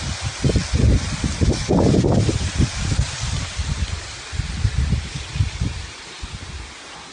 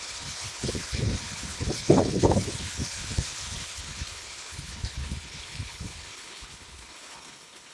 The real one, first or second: first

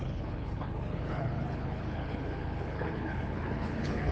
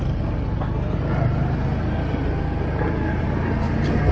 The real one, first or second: second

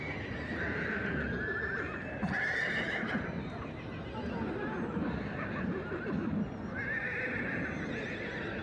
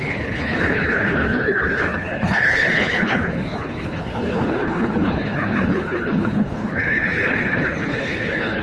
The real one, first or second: first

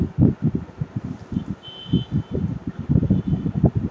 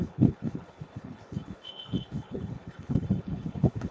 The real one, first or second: first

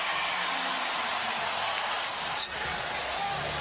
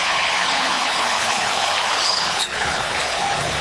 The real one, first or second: first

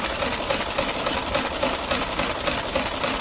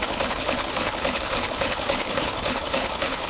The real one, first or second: first